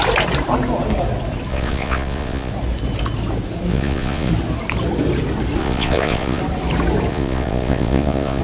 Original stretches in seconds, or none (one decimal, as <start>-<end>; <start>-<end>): 0.0-1.5; 2.5-3.7; 4.3-5.6; 6.4-7.1